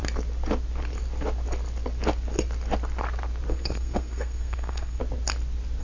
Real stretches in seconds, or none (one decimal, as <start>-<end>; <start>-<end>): 0.0-3.5; 5.0-5.8